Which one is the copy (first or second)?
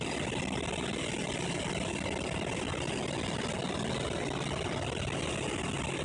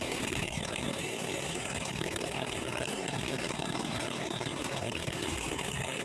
second